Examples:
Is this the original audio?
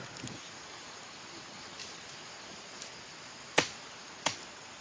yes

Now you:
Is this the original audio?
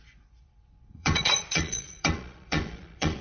no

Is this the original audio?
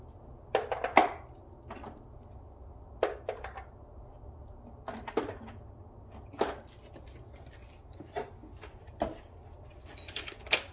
yes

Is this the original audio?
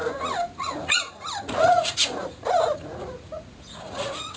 no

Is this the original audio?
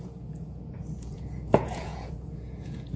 no